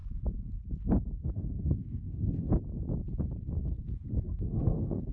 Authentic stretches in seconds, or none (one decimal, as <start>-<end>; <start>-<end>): 0.0-1.3; 2.5-4.2